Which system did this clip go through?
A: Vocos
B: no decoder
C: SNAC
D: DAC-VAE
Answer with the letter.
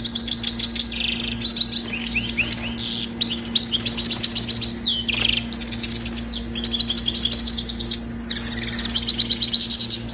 B